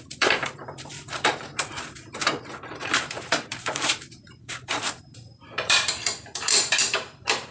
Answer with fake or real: fake